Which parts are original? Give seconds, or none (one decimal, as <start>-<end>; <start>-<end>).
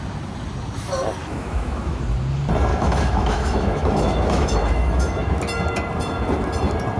0.0-1.2; 2.0-2.7; 5.4-7.0